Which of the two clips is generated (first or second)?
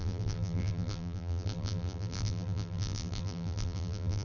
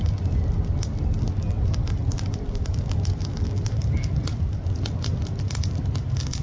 first